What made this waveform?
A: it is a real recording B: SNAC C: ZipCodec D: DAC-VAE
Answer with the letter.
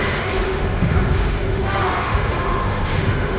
D